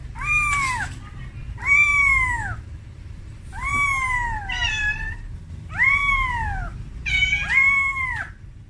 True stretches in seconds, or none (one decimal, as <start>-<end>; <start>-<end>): 0.0-3.0; 3.7-4.7; 6.0-7.1